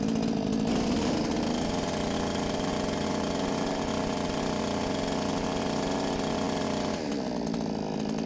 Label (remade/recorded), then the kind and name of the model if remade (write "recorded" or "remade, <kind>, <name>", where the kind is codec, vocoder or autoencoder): recorded